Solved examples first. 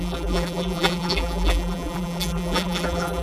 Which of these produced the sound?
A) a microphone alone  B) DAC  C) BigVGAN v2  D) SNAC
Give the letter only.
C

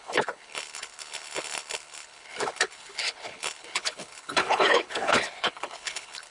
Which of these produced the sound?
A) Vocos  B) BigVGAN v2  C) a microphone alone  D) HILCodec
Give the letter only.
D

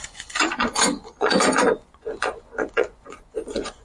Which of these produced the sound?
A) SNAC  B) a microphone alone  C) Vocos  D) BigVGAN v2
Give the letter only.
C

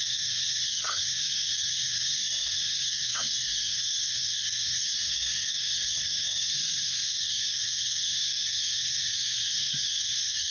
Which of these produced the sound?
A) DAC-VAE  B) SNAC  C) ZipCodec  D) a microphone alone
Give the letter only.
B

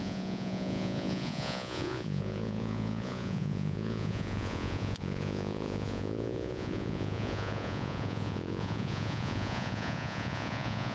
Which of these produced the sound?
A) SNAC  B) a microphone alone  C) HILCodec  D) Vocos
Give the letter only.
D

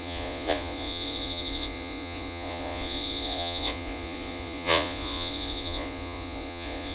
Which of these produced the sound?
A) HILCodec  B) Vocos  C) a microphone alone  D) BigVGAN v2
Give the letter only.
B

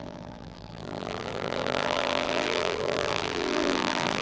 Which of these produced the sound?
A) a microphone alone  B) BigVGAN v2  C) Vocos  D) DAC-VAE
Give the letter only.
B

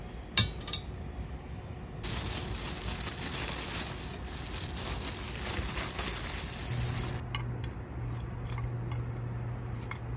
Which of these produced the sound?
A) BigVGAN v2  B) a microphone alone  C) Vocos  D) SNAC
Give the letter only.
B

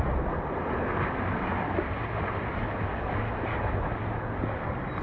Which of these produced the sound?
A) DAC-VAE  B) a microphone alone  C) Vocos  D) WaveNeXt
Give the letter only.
B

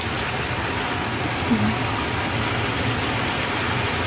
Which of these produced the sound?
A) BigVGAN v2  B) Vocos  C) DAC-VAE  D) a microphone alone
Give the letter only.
D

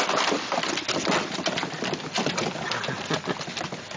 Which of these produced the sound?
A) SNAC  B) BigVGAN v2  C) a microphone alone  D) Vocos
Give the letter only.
B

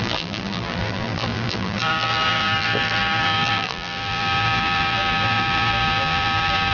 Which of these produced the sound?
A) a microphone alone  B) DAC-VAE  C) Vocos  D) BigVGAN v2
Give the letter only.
D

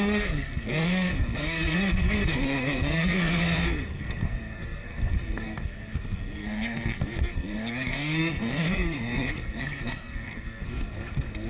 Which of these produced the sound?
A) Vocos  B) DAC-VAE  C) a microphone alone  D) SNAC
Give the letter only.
D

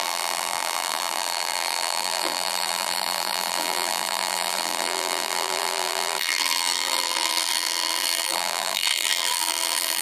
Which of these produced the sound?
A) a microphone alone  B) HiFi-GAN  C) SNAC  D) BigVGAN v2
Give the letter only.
D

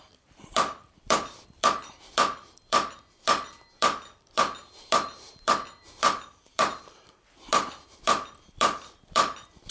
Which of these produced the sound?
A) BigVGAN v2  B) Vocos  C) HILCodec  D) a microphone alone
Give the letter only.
A